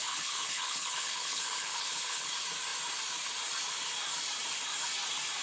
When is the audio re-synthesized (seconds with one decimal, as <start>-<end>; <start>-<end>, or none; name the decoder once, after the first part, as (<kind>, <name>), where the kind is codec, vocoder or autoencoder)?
0.0-2.3 (codec, HILCodec)